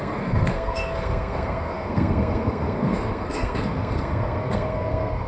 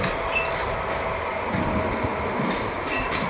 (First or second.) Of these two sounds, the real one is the second